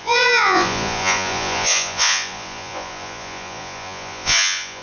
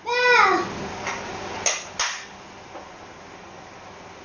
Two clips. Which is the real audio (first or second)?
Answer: second